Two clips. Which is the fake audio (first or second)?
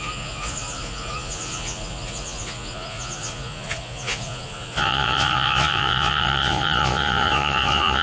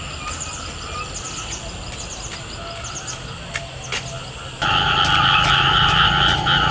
first